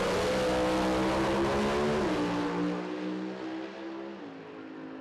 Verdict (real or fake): real